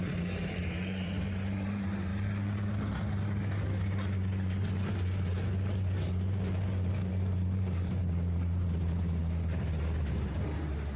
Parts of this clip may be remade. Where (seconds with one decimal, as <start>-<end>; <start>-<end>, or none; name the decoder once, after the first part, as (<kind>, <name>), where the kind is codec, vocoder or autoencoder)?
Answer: 0.0-2.1 (vocoder, BigVGAN v2); 6.9-9.2; 10.0-11.0